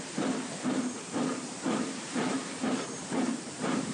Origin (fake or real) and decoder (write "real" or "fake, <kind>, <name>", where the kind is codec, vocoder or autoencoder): fake, vocoder, BigVGAN v2